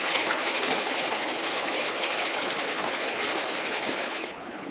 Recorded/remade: remade